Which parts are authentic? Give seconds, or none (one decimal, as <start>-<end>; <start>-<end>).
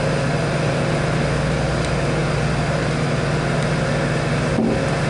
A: 0.0-5.1